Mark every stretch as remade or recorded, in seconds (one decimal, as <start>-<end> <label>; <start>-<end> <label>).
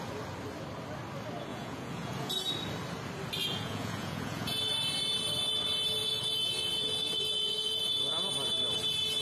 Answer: 0.0-1.5 recorded; 1.5-2.5 remade; 2.5-3.4 recorded; 3.4-4.7 remade; 4.7-6.0 recorded; 6.0-8.3 remade; 8.3-9.2 recorded